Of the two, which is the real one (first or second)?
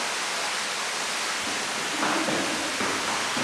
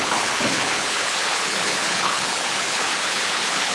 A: first